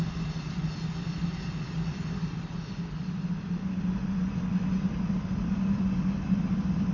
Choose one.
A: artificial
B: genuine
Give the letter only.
B